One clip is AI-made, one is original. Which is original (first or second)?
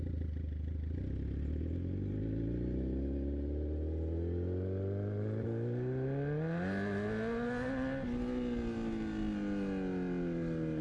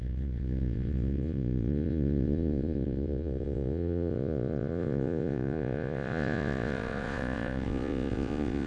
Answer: first